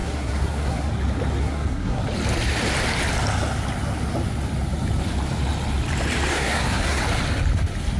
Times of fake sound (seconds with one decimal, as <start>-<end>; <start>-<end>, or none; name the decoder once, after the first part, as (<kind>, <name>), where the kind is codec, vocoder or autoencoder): 0.0-0.9 (codec, SNAC); 1.4-2.0; 6.3-7.0